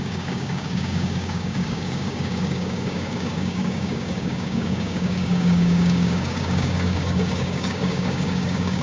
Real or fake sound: fake